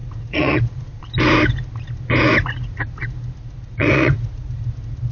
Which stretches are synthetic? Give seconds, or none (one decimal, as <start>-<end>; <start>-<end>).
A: 0.0-1.0; 3.7-4.6